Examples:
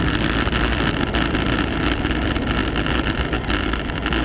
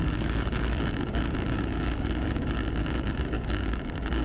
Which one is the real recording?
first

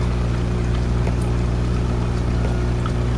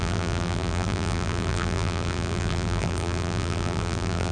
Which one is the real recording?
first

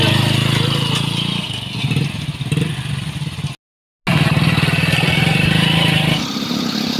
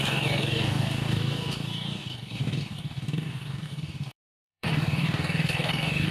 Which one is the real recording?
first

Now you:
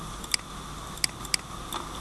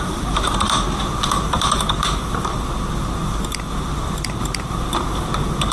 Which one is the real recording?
first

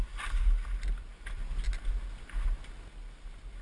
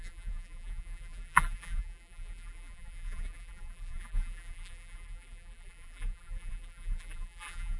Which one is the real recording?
first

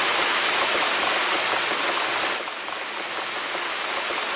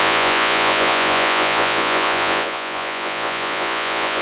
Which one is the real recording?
first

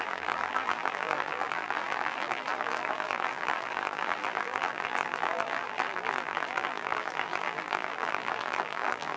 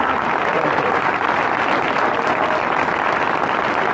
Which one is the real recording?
second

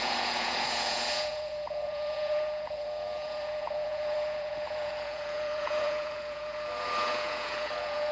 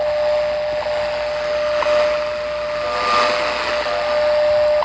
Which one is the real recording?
second